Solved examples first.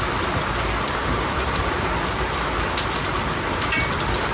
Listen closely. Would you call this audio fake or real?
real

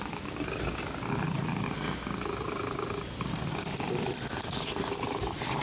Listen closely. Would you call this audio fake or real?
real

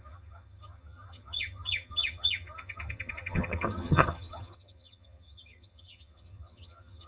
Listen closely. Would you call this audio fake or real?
fake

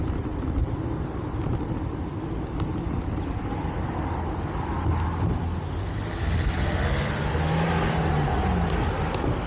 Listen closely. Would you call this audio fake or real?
real